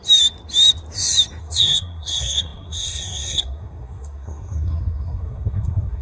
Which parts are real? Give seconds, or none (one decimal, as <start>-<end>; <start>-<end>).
0.0-1.4